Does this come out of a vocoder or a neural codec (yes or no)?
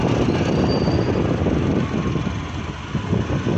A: no